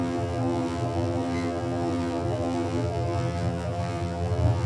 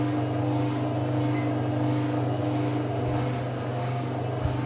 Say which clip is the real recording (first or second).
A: second